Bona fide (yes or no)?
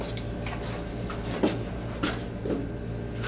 yes